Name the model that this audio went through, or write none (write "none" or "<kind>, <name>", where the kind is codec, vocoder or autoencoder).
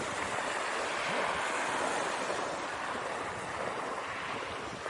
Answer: none